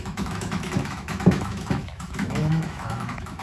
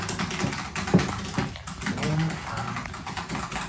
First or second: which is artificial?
first